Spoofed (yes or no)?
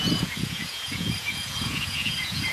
yes